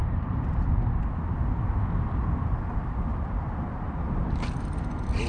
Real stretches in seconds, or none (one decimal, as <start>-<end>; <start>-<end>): 0.8-3.1; 4.4-5.3